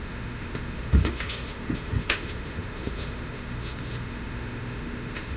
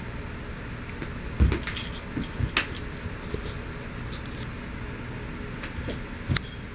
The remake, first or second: first